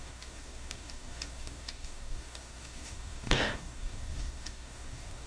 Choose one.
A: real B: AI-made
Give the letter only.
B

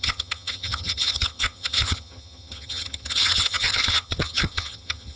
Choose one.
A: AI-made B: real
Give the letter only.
A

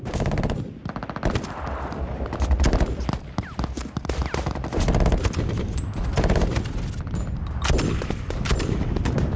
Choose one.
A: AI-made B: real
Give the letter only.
B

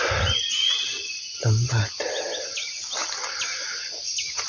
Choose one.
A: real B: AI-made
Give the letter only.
A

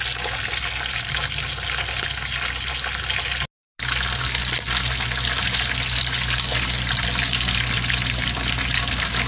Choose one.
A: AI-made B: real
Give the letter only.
B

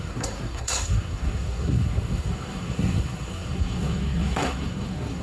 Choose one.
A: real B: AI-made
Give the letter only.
B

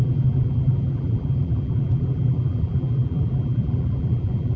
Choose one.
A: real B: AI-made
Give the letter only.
B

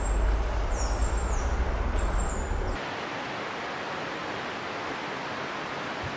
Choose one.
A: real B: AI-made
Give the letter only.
A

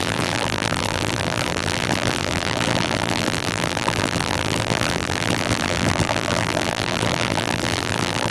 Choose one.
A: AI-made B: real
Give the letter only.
A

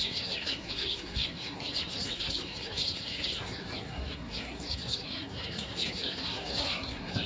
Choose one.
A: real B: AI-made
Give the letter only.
B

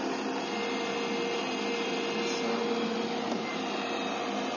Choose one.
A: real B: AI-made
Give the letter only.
A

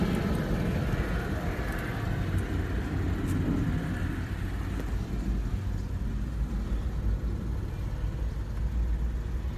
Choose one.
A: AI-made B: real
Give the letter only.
B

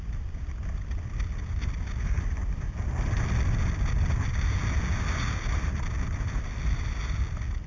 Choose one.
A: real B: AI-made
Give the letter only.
A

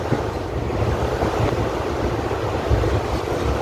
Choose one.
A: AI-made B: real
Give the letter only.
B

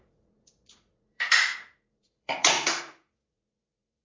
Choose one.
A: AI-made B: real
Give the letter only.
A